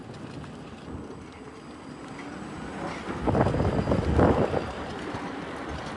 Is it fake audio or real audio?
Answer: real